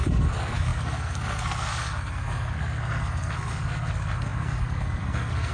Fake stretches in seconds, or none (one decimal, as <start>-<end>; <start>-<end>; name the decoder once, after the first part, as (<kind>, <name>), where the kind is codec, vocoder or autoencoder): 0.0-5.5 (codec, SNAC)